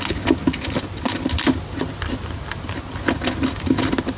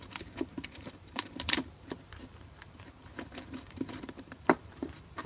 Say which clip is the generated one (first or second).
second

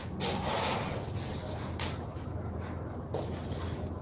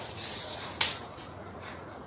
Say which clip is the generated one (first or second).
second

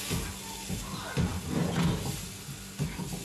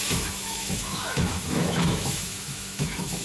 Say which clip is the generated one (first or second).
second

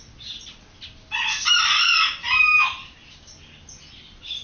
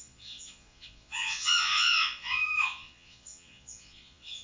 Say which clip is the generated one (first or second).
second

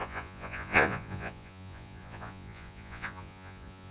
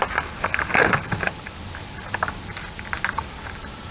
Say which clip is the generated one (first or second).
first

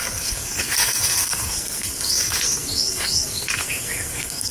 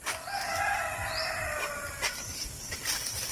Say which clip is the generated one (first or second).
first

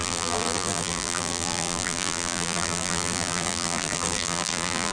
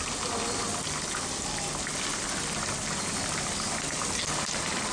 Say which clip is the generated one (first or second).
first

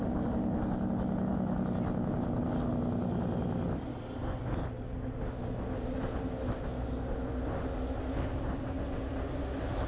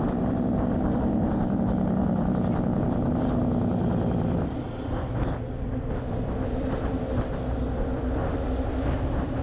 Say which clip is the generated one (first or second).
second